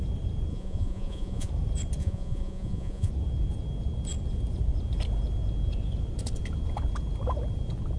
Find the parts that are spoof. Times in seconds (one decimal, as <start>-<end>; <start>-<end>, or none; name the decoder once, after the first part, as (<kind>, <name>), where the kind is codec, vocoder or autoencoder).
0.5-1.5 (vocoder, Vocos); 2.0-3.1

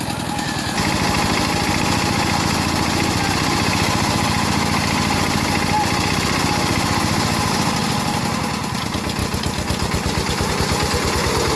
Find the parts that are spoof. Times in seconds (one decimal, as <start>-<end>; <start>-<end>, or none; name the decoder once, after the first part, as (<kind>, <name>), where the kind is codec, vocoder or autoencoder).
9.2-10.5 (vocoder, BigVGAN v2)

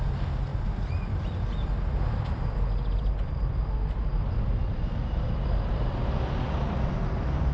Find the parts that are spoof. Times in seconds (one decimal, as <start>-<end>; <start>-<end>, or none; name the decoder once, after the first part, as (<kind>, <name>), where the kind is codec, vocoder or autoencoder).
none

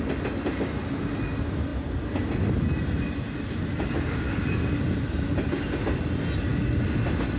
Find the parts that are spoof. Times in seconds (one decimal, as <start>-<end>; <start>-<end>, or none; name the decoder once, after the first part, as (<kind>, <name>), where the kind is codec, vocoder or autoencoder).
none

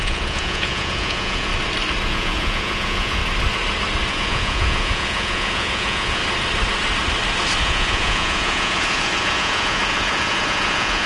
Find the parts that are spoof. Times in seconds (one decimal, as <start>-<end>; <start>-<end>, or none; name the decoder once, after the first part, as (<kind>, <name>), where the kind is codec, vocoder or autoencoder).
0.0-1.5 (vocoder, Vocos); 2.1-3.2; 4.1-6.2; 7.6-11.1

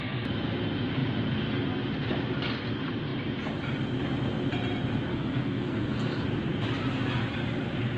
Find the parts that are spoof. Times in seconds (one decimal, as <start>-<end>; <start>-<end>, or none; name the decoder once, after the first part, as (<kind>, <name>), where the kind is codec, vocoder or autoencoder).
5.1-6.3 (codec, SNAC)

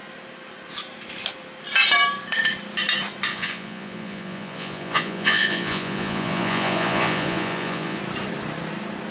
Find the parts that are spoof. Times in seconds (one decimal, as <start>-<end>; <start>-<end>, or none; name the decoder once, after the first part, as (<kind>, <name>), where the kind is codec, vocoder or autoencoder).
3.3-8.0 (vocoder, Vocos)

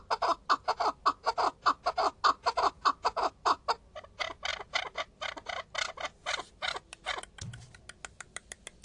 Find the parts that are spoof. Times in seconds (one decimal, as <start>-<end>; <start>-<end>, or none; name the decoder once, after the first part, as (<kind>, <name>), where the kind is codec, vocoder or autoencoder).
none